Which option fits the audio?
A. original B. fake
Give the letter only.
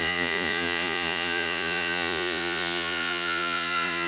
B